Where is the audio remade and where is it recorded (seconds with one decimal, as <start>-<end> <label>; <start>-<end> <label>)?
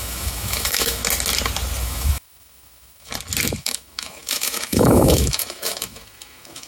0.0-1.0 remade; 1.0-1.8 recorded; 1.8-3.1 remade; 3.1-3.6 recorded; 3.6-6.7 remade